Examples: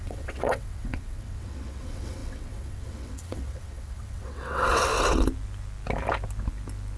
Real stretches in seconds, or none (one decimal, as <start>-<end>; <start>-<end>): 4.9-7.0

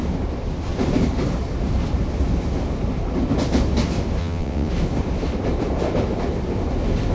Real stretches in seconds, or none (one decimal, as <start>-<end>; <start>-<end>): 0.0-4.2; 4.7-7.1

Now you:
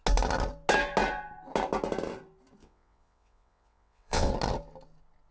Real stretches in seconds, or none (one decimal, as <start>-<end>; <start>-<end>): 0.0-2.6; 4.3-5.3